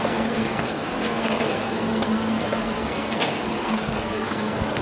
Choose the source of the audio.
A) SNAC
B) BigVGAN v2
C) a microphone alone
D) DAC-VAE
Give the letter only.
A